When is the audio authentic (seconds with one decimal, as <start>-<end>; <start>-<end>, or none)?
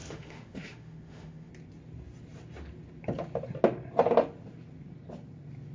1.5-5.7